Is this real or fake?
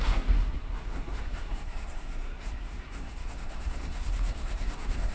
fake